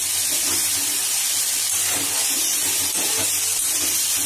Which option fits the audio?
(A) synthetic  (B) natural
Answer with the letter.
B